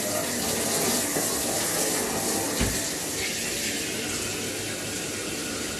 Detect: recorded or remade recorded